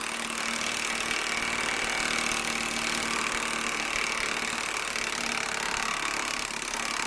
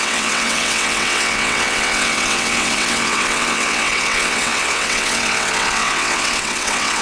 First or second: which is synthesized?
second